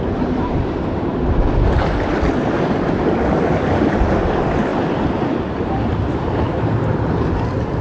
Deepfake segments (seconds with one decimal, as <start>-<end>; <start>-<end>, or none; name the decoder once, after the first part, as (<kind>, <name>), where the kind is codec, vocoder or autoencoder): 0.0-1.1 (vocoder, BigVGAN v2); 4.2-7.8